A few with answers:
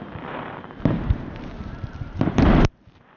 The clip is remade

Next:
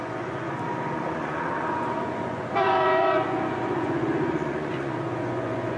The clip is remade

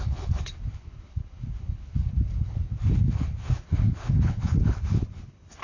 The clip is remade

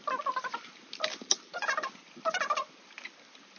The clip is remade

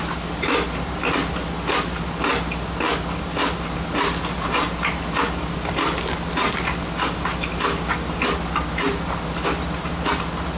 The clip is recorded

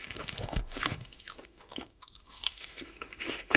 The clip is remade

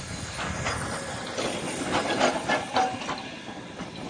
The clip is recorded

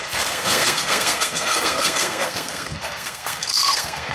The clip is remade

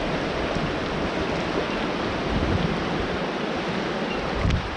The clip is recorded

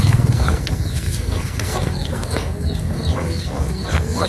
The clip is remade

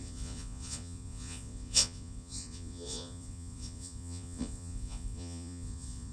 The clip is remade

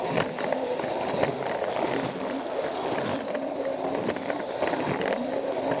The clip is recorded